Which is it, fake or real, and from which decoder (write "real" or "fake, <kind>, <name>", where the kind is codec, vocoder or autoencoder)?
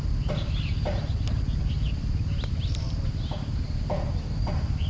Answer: real